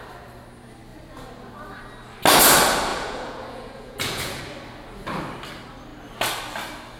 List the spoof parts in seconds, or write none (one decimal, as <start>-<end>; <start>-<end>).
2.9-4.4